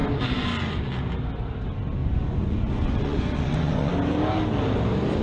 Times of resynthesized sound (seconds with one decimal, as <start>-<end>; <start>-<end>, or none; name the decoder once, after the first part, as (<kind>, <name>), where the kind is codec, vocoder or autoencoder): 2.0-3.9 (vocoder, Vocos)